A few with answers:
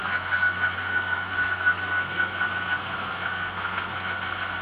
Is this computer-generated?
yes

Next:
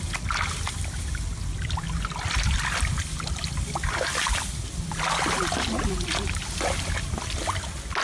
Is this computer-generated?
no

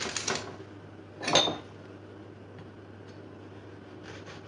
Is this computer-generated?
no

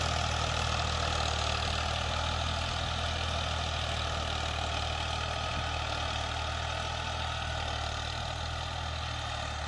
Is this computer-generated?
no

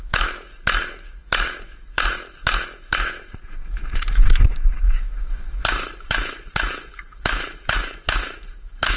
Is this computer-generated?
yes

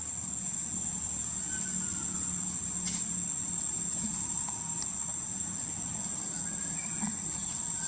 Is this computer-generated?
no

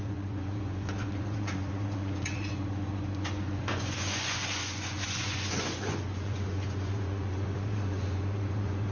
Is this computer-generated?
yes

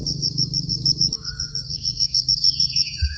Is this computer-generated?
yes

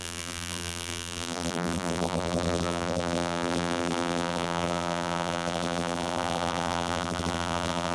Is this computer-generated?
yes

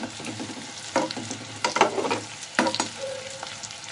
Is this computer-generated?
no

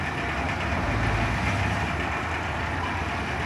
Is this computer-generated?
no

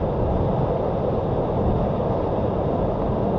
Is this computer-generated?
no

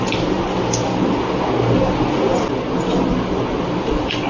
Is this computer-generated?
no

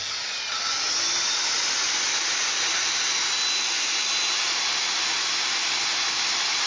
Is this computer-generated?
no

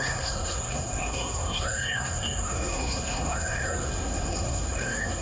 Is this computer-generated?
yes